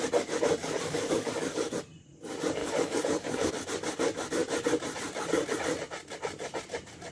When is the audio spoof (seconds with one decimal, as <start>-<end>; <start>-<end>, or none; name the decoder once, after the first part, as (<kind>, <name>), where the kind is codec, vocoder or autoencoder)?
0.6-1.7 (codec, DAC); 2.6-3.5